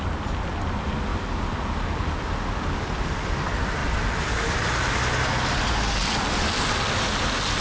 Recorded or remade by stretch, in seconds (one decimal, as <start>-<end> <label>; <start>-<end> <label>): 0.0-7.6 recorded